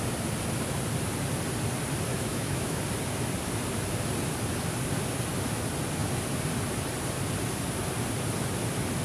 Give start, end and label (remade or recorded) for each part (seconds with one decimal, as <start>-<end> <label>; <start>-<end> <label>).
0.0-2.1 recorded; 2.1-2.8 remade; 2.8-9.0 recorded